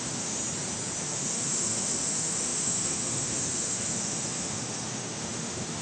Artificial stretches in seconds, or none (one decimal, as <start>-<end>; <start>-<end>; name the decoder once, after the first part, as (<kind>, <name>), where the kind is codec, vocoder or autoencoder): 0.0-0.4 (autoencoder, DAC-VAE); 1.0-5.8